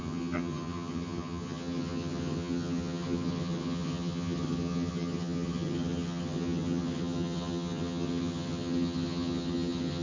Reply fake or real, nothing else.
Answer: fake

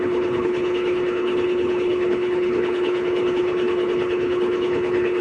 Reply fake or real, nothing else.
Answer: fake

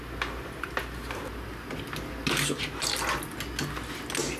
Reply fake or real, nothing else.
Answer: real